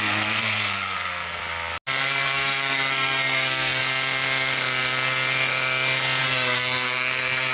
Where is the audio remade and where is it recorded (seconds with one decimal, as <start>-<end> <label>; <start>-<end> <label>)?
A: 0.0-1.4 remade; 1.4-2.0 recorded; 2.0-3.8 remade; 3.8-6.2 recorded; 6.2-7.5 remade